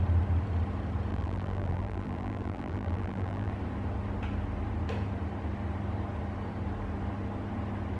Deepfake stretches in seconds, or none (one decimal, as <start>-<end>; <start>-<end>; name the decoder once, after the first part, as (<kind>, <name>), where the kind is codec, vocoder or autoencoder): 1.1-3.5 (vocoder, BigVGAN v2)